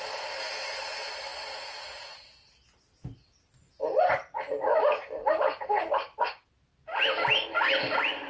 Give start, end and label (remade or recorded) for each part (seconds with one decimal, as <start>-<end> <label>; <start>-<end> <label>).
0.0-8.3 recorded